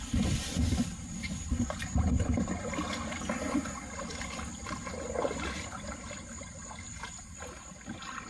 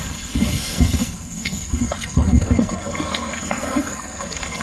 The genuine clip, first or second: first